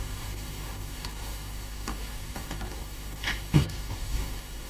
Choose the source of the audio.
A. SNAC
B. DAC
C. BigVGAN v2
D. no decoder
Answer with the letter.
B